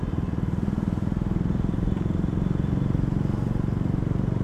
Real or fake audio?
real